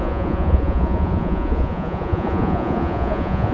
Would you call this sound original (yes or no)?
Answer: no